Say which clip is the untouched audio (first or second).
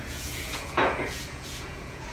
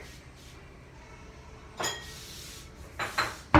second